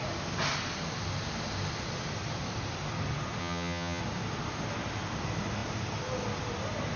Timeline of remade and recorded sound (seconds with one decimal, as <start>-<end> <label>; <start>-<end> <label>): 0.0-3.4 recorded; 3.4-4.0 remade; 4.0-7.0 recorded